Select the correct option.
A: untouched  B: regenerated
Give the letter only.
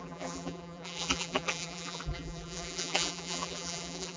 B